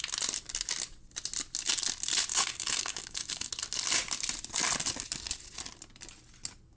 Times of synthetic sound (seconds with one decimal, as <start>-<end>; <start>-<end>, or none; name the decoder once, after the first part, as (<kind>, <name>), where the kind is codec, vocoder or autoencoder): 2.3-3.5 (codec, DAC)